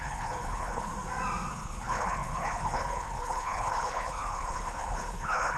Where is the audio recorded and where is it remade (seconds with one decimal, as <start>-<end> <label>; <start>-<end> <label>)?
0.0-0.9 remade; 0.9-1.5 recorded; 1.5-5.6 remade